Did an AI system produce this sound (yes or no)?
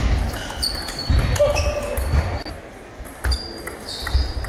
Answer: no